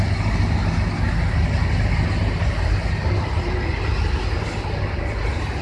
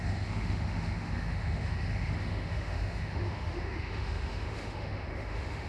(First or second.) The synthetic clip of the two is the second